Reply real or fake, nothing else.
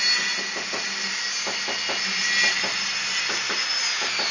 real